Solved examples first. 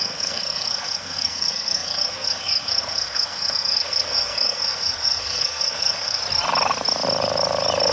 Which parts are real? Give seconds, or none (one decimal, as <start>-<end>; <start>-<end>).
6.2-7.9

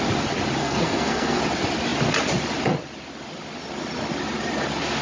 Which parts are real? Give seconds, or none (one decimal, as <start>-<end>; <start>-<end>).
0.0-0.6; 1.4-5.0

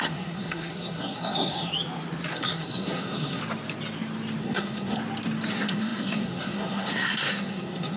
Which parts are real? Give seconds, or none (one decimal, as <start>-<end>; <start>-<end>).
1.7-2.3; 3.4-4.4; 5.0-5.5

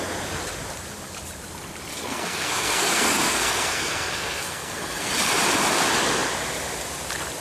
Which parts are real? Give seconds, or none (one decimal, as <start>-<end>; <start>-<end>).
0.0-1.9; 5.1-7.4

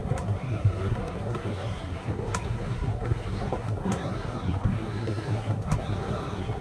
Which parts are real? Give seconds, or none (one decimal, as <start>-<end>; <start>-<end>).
none